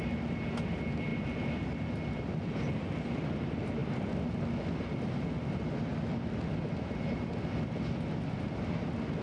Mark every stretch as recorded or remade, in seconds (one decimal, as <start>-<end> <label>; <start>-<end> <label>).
0.0-9.2 recorded